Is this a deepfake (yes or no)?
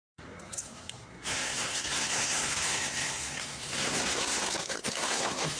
yes